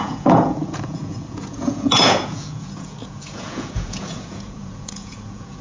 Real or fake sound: fake